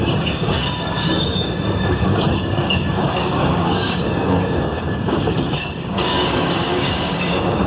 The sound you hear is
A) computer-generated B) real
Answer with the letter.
A